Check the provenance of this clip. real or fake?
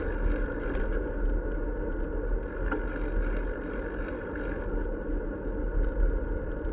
real